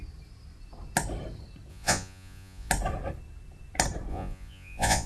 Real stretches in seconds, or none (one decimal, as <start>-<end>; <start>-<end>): 0.0-1.7; 2.7-4.1